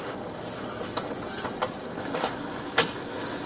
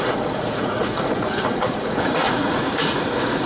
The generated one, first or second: second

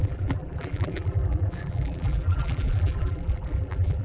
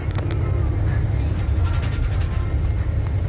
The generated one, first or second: first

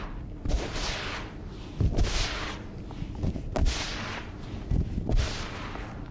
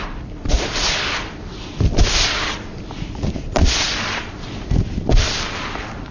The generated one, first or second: second